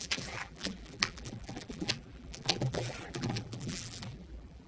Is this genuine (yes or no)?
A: no